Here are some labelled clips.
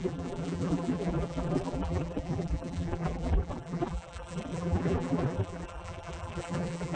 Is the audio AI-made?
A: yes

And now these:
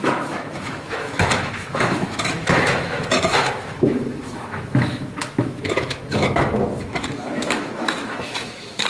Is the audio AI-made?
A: yes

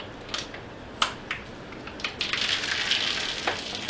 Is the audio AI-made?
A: no